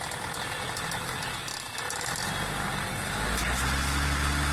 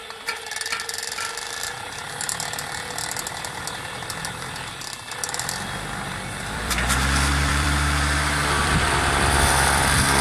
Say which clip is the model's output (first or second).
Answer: second